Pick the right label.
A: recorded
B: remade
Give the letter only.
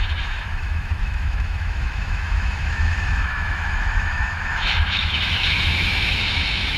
B